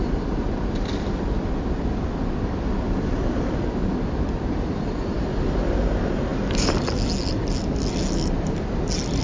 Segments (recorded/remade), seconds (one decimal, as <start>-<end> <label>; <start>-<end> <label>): 0.0-9.2 recorded